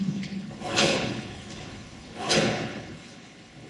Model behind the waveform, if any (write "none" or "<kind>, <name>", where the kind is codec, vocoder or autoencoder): codec, HILCodec